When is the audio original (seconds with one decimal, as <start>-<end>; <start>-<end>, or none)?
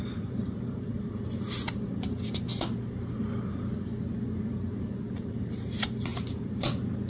2.5-4.5